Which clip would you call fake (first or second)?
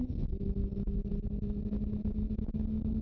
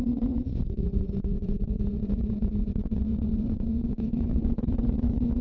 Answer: second